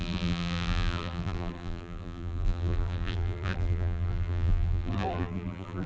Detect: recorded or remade remade